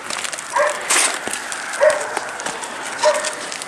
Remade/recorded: recorded